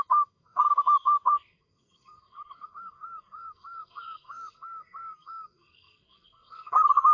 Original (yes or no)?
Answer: no